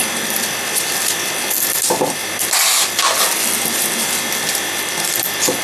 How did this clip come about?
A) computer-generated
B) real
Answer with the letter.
B